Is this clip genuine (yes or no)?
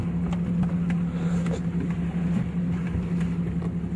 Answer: yes